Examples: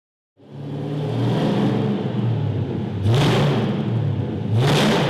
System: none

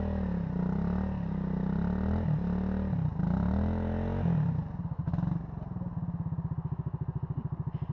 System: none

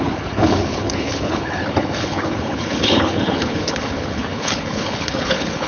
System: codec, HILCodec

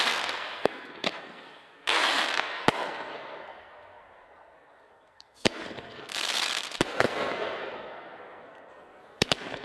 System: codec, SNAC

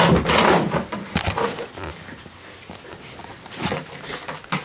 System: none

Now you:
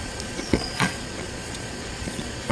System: vocoder, Vocos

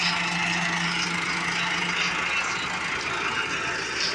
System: none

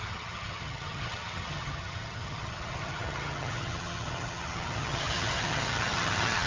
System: vocoder, HiFi-GAN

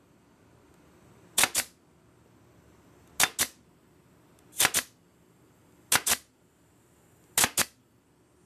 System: none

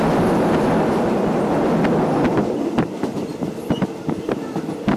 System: none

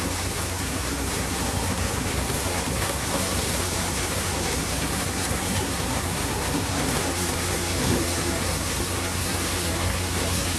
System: codec, SNAC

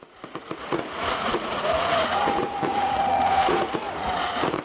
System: vocoder, Vocos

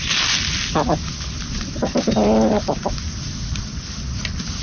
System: none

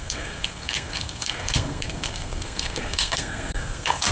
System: codec, SNAC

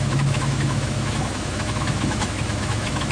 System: autoencoder, DAC-VAE